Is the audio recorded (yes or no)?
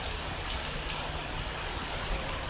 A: yes